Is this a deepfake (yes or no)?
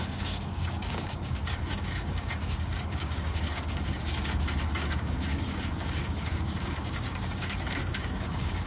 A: yes